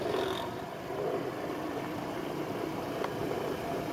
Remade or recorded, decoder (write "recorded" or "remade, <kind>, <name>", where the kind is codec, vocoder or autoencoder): recorded